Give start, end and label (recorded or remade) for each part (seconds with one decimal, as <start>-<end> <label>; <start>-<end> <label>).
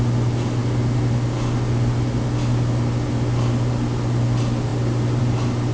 0.0-5.7 recorded